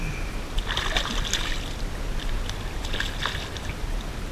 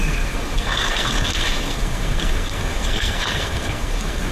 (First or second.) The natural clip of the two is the first